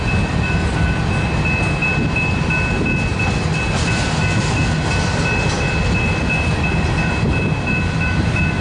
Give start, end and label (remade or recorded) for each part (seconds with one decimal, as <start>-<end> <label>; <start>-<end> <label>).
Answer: 0.0-8.6 recorded